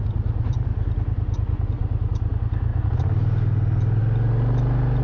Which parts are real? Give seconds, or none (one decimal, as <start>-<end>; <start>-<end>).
0.0-5.0